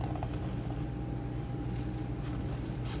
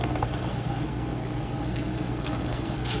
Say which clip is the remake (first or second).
second